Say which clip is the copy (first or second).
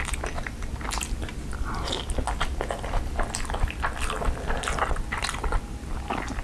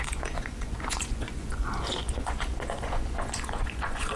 second